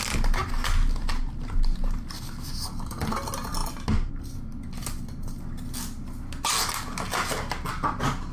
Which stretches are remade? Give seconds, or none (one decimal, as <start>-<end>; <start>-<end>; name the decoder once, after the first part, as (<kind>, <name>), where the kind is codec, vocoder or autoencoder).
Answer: none